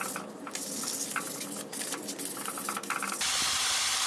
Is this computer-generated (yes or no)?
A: no